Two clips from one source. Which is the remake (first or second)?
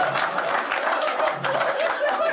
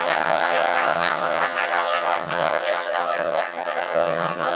second